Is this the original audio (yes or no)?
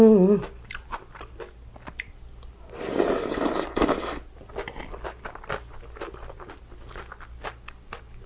yes